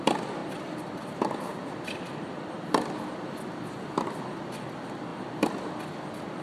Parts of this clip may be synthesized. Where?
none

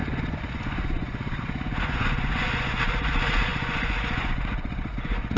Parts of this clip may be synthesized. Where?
0.0-5.4 (vocoder, Vocos)